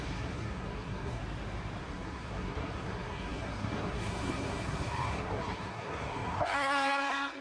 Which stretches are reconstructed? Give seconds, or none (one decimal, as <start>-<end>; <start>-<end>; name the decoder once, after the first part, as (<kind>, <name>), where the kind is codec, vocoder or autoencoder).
0.0-1.2 (codec, SNAC); 1.8-7.4